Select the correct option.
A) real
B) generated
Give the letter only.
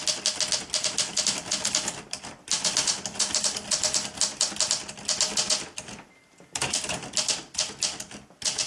A